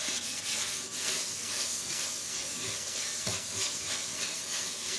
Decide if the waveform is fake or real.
fake